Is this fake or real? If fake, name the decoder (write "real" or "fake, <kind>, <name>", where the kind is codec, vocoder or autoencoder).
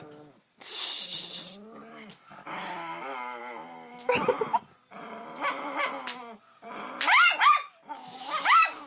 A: real